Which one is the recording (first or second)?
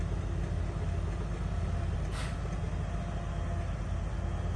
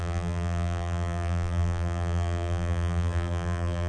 first